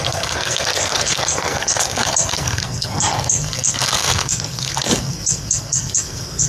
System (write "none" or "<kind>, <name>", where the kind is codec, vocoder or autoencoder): codec, SNAC